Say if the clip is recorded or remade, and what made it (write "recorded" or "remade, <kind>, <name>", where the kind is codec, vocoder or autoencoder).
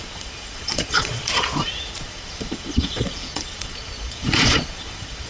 remade, vocoder, Vocos